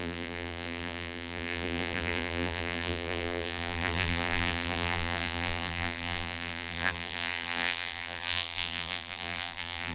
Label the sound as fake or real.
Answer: fake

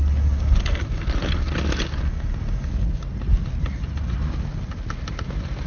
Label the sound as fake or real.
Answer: real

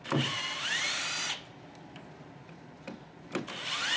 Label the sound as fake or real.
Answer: fake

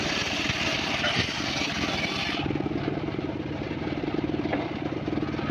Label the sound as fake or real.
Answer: fake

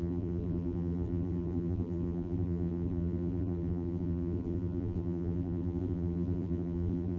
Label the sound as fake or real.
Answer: fake